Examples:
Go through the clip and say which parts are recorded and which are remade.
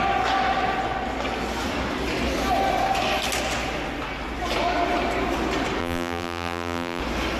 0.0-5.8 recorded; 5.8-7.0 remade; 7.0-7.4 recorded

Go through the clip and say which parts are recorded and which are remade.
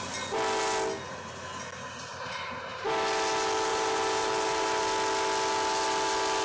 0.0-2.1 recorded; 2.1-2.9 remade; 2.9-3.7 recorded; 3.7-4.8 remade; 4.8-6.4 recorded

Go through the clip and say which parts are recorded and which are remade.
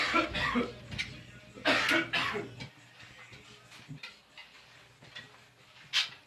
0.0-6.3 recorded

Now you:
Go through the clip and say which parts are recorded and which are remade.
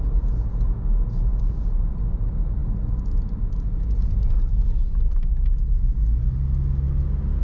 0.0-7.4 recorded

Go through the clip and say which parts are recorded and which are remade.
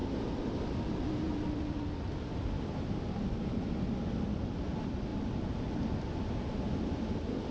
0.0-0.7 remade; 0.7-5.1 recorded; 5.1-6.2 remade; 6.2-7.5 recorded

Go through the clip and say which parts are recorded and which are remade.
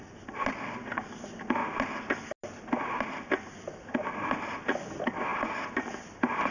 0.0-6.5 recorded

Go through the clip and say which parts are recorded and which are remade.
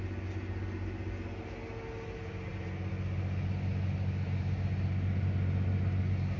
0.0-6.4 recorded